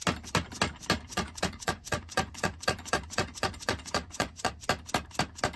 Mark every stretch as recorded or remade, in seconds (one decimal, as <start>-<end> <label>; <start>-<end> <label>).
0.0-1.1 recorded; 1.1-4.5 remade; 4.5-5.6 recorded